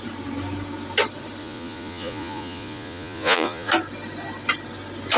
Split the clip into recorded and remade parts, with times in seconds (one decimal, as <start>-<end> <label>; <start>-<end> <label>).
0.0-1.4 recorded; 1.4-3.7 remade; 3.7-5.2 recorded